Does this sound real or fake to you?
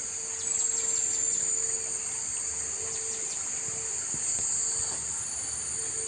real